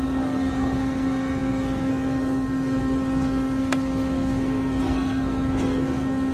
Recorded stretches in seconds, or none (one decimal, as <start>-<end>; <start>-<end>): none

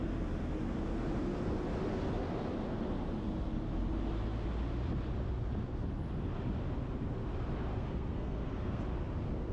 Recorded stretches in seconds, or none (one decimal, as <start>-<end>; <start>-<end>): 0.0-7.7; 8.8-9.5